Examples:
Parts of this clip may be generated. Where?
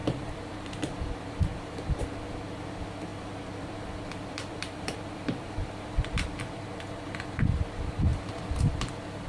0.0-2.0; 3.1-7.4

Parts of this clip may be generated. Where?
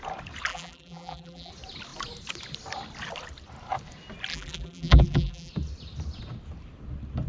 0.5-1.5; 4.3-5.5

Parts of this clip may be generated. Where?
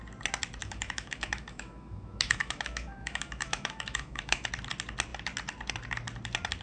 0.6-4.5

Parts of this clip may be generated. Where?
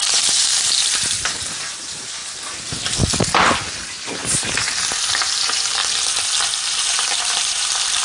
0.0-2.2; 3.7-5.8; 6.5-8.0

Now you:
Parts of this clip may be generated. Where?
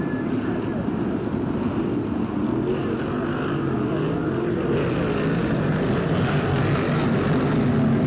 none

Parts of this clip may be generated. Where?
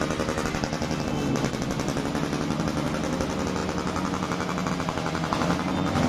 none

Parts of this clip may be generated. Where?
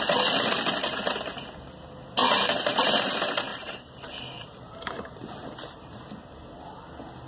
2.2-3.1; 3.5-6.0